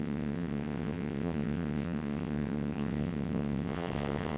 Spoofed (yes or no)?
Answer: yes